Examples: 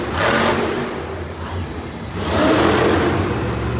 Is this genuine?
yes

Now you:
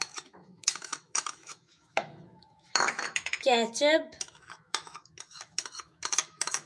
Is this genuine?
no